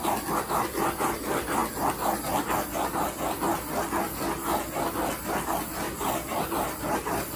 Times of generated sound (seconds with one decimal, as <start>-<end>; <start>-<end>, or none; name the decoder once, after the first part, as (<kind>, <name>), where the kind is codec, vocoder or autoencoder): 0.0-1.6 (vocoder, BigVGAN v2); 5.7-7.4